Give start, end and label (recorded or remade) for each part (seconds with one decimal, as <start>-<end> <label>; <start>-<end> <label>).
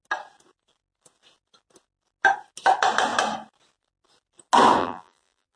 0.0-4.8 recorded; 4.8-5.6 remade